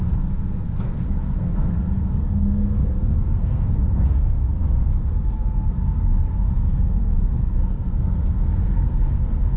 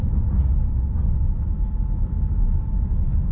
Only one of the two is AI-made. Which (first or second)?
first